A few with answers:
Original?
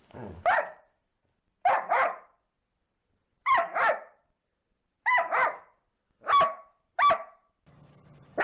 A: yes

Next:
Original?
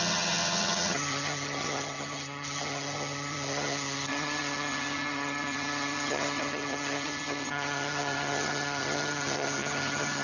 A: no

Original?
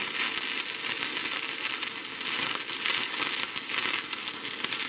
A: yes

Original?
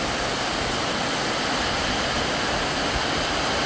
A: yes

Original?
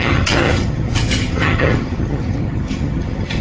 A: no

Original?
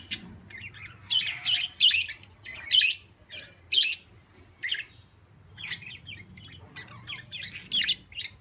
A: yes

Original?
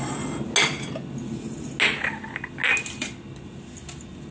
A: yes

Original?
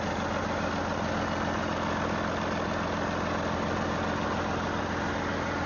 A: yes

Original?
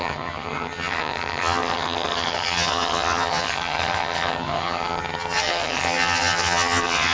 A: no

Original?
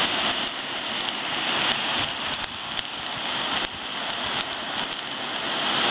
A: yes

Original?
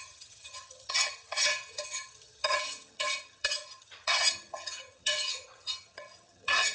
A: no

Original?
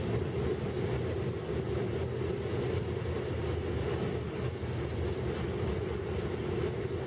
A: yes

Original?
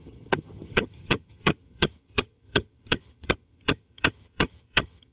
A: no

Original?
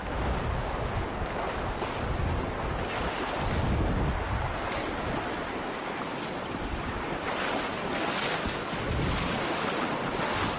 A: yes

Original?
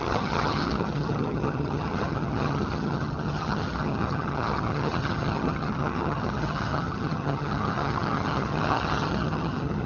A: no